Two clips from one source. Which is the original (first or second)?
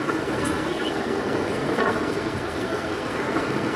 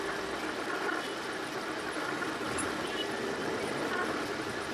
second